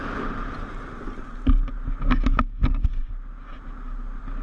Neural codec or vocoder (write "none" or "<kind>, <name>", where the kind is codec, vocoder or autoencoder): none